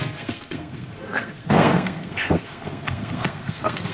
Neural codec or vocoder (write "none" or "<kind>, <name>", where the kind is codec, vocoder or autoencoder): codec, SNAC